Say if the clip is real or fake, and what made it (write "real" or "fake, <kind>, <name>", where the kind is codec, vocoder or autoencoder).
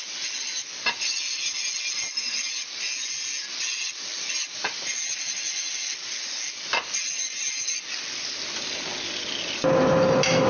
real